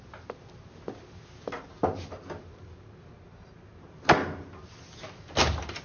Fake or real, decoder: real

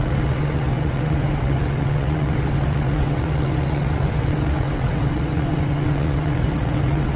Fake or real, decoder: fake, vocoder, WaveNeXt